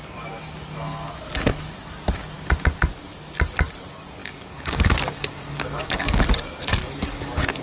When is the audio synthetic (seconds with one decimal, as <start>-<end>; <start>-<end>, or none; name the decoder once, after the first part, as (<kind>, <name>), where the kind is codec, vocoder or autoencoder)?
4.2-6.2 (codec, DAC); 6.8-7.6